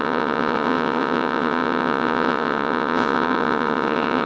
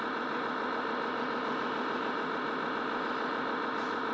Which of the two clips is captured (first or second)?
second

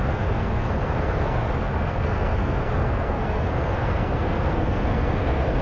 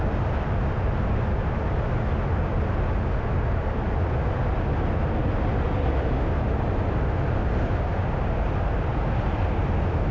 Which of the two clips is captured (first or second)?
second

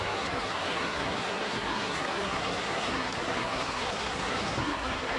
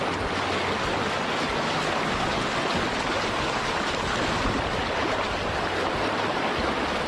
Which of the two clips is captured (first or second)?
second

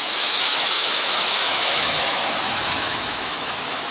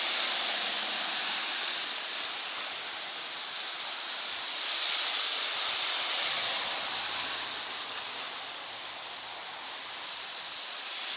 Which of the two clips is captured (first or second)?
second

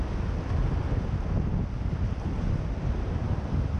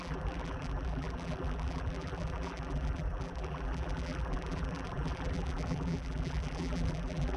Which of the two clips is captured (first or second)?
first